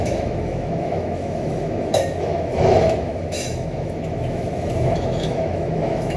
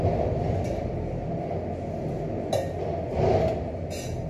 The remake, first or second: first